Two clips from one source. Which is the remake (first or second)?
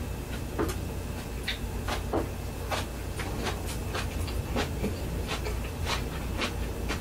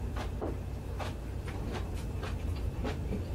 second